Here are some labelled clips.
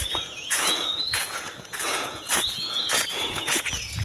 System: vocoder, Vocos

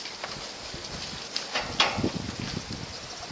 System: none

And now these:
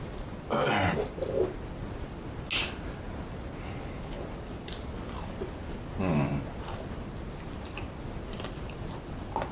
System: none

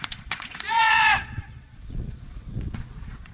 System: vocoder, Vocos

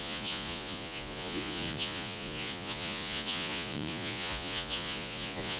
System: vocoder, Vocos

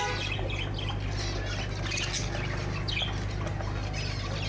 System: none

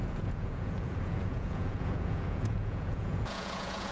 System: vocoder, Vocos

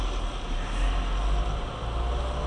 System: none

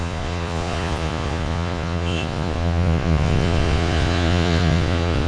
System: vocoder, Vocos